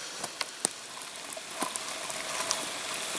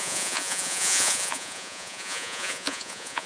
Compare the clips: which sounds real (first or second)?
first